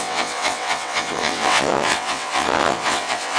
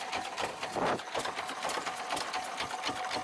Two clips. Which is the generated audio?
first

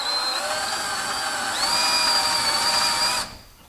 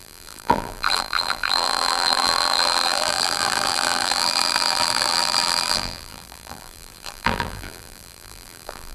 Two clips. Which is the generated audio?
second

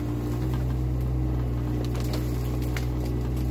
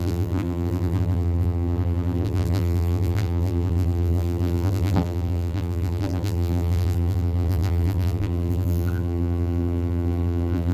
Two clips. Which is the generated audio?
second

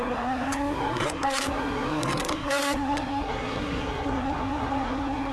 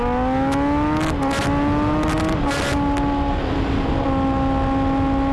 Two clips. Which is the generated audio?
first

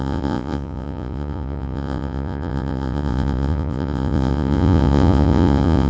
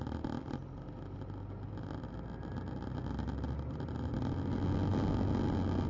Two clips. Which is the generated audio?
first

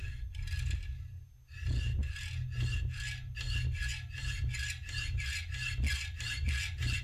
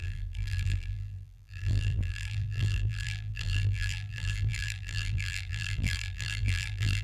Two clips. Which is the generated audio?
second